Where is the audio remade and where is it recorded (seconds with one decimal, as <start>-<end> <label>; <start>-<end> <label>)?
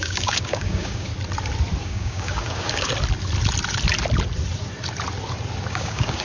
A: 0.0-1.1 remade; 1.1-1.8 recorded; 1.8-2.9 remade; 2.9-5.7 recorded; 5.7-6.2 remade